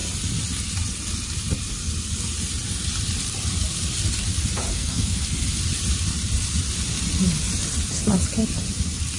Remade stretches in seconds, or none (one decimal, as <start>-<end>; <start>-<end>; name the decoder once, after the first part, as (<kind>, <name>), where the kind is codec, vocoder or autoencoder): 4.7-5.2 (codec, SNAC)